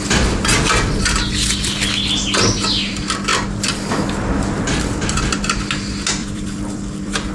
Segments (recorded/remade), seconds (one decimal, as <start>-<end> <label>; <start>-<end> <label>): 0.0-6.2 recorded; 6.2-7.3 remade